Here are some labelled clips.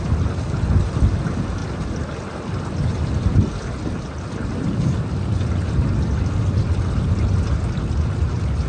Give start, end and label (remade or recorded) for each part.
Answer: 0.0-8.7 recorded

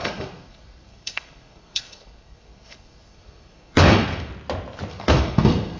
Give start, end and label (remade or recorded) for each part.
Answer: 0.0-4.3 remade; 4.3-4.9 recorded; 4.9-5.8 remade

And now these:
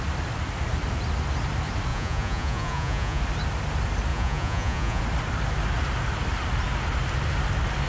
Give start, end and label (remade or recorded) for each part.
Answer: 0.0-1.9 recorded; 1.9-3.2 remade; 3.2-4.1 recorded; 4.1-5.0 remade; 5.0-7.9 recorded

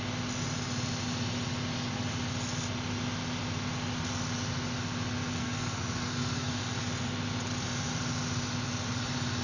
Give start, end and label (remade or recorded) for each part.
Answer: 0.0-5.4 recorded; 5.4-6.5 remade; 6.5-9.4 recorded